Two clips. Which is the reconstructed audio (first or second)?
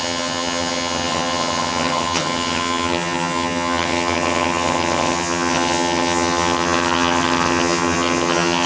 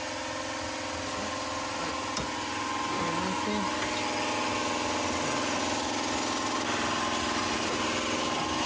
first